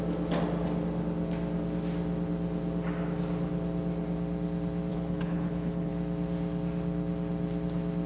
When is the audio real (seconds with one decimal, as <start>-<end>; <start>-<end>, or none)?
0.0-4.9; 5.9-8.1